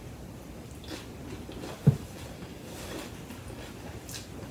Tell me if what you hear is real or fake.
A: real